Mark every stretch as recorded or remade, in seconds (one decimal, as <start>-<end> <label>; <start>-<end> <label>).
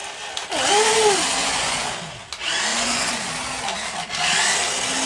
0.0-1.4 recorded; 1.4-2.0 remade; 2.0-2.7 recorded; 2.7-3.3 remade; 3.3-5.1 recorded